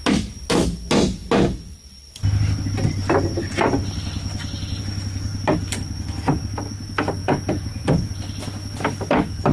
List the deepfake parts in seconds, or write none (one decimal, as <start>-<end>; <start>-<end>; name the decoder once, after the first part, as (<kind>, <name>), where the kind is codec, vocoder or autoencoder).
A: 7.2-8.1 (vocoder, Vocos)